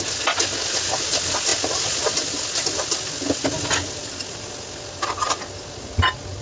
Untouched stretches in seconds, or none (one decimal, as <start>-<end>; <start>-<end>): 0.0-6.4